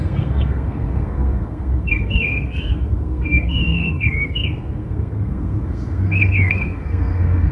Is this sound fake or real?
fake